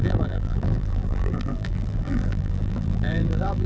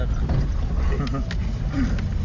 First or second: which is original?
second